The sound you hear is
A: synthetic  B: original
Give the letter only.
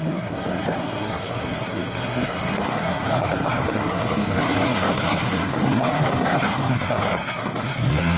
A